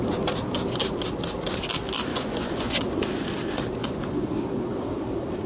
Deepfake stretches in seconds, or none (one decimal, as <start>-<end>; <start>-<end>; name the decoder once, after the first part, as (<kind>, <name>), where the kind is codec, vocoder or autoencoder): 2.1-2.8 (vocoder, Vocos); 3.8-4.3